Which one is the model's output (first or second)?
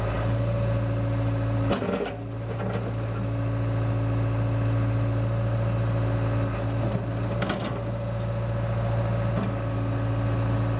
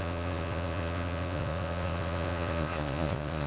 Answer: second